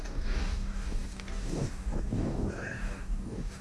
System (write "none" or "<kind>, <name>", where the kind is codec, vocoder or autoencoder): codec, DAC